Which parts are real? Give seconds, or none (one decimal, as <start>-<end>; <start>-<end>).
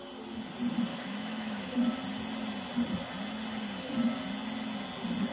0.0-0.9; 1.9-5.3